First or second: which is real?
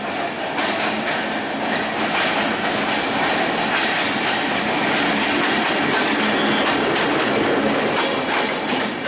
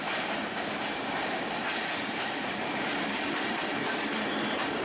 first